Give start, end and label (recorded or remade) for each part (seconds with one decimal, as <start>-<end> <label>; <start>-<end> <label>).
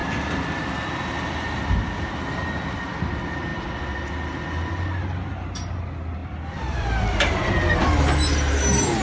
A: 0.0-6.2 recorded; 6.2-7.8 remade; 7.8-9.0 recorded